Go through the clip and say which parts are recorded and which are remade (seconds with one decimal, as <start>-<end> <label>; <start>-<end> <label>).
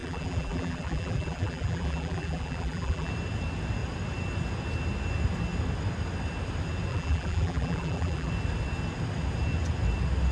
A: 0.0-3.1 remade; 3.1-6.9 recorded; 6.9-8.3 remade; 8.3-10.3 recorded